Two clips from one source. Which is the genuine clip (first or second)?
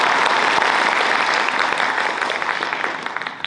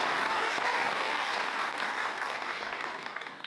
first